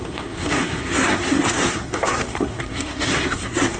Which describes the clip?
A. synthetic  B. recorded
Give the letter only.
A